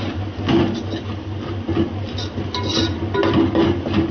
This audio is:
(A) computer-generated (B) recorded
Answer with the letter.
B